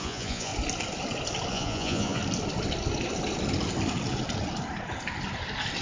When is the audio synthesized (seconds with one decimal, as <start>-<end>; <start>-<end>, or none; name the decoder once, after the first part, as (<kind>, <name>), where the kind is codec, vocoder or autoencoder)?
0.0-0.5 (vocoder, Vocos); 1.5-2.2